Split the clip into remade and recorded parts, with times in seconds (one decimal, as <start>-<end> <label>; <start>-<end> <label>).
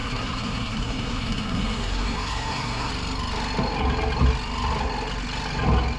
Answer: 0.0-2.9 remade; 2.9-6.0 recorded